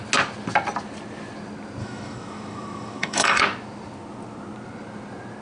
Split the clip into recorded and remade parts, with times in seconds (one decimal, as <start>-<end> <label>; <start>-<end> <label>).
0.0-1.8 recorded; 1.8-3.4 remade; 3.4-5.4 recorded